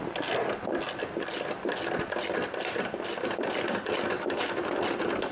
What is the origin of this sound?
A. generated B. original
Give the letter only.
B